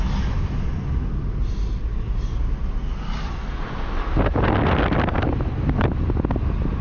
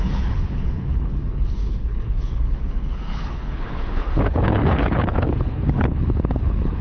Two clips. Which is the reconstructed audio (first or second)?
second